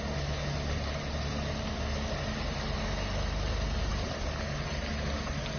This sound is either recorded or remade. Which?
recorded